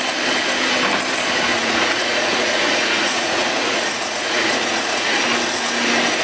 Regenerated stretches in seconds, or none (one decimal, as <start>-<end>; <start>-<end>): 1.5-5.2